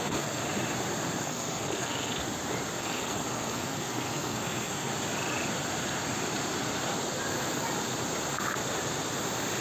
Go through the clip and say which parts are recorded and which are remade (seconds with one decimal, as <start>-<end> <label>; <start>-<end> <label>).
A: 0.0-0.4 remade; 0.4-1.2 recorded; 1.2-2.1 remade; 2.1-2.8 recorded; 2.8-4.9 remade; 4.9-9.6 recorded